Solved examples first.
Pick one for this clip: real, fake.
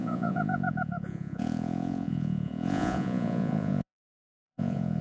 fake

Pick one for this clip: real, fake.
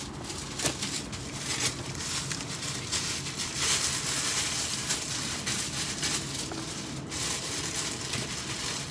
real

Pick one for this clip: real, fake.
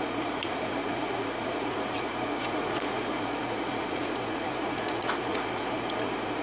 fake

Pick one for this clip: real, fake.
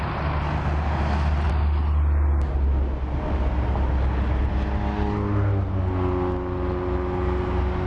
real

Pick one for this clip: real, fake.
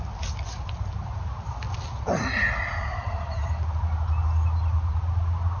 real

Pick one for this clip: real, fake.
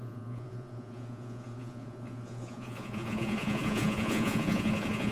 fake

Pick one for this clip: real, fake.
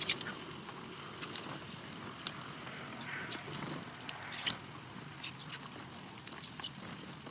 real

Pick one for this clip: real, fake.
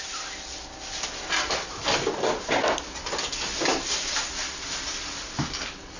real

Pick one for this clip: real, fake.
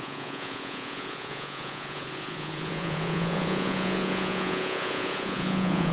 fake